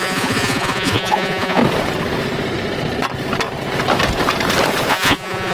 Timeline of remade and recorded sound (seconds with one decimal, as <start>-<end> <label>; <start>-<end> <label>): 0.0-1.6 remade; 1.6-4.9 recorded; 4.9-5.5 remade